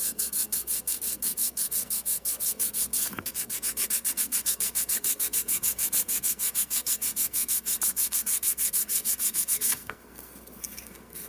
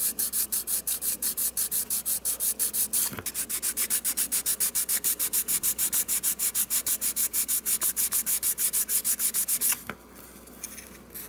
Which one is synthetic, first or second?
first